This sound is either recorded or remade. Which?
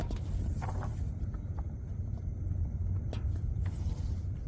recorded